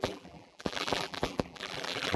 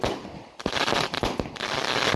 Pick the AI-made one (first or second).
first